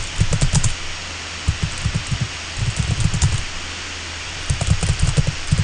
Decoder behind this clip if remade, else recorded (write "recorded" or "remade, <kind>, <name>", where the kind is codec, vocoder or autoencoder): recorded